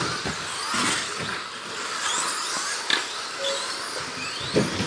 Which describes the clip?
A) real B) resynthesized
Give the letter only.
A